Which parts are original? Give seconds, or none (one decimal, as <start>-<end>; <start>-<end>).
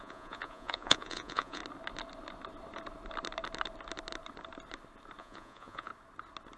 1.6-5.2; 5.9-6.6